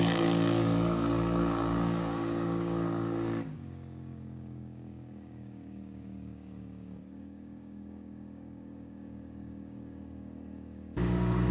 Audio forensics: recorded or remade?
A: remade